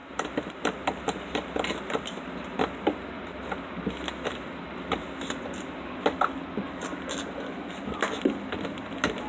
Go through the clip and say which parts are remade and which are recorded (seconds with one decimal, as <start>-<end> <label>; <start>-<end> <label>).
0.0-9.3 recorded